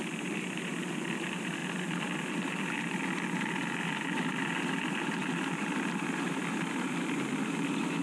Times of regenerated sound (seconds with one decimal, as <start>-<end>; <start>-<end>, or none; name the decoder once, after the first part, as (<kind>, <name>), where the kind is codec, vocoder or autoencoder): none